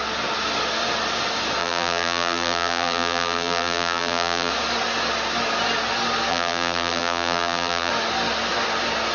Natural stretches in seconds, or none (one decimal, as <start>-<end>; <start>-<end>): 0.0-1.6; 4.5-6.3; 7.9-9.1